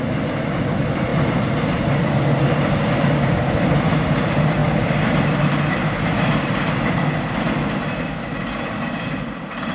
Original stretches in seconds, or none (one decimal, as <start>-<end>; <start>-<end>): 0.0-9.7